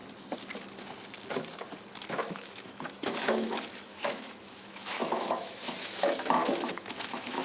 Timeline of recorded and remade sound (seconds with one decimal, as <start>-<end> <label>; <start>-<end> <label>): 0.0-2.1 recorded; 2.1-7.4 remade